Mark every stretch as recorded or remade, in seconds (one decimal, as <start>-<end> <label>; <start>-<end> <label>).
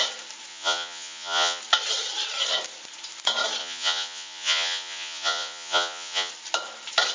0.0-0.5 recorded; 0.5-1.6 remade; 1.6-3.6 recorded; 3.6-6.3 remade; 6.3-7.1 recorded